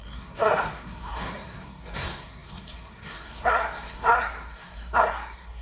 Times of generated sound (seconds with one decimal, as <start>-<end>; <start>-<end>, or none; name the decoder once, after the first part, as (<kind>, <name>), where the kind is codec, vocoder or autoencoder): 0.0-5.6 (codec, SNAC)